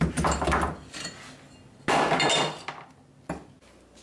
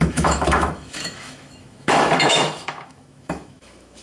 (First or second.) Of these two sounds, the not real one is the second